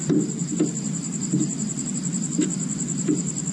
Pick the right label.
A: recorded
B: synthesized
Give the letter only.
A